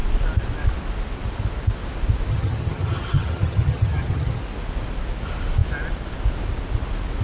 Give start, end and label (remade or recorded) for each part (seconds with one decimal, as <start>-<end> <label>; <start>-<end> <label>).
0.0-2.3 recorded; 2.3-4.4 remade; 4.4-7.2 recorded